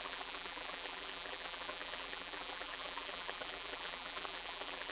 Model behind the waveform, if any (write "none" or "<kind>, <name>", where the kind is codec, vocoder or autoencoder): vocoder, BigVGAN v2